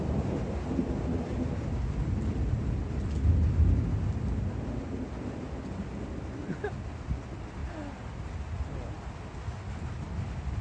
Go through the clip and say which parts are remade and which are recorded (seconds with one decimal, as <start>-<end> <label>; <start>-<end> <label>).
0.0-10.6 recorded

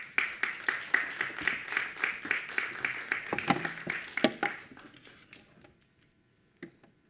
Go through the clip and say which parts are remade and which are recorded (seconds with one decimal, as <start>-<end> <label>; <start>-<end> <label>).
0.0-7.1 recorded

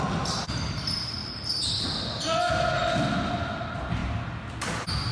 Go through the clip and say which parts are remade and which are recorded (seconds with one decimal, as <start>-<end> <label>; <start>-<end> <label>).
0.0-5.1 recorded

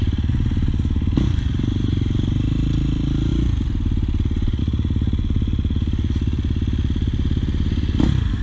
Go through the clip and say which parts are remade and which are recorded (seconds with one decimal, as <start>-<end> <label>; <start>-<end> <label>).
0.0-8.4 recorded

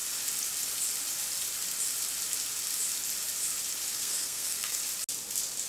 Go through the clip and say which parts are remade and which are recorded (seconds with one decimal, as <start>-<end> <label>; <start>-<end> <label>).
0.0-3.9 recorded; 3.9-4.8 remade; 4.8-5.7 recorded

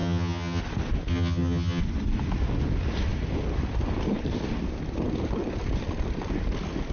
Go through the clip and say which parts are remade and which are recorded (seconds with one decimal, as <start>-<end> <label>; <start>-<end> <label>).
0.0-0.6 remade; 0.6-1.1 recorded; 1.1-1.8 remade; 1.8-6.9 recorded